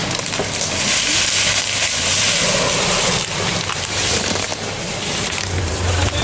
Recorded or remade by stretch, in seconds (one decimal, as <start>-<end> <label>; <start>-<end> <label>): 0.0-3.7 recorded; 3.7-4.5 remade; 4.5-5.0 recorded; 5.0-6.2 remade